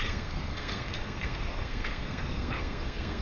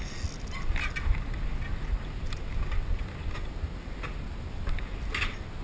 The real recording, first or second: second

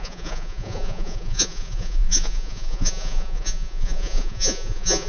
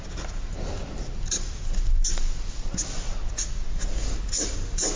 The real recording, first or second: second